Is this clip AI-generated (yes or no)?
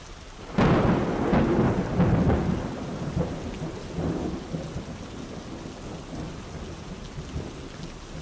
no